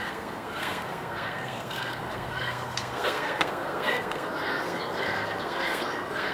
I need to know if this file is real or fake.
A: fake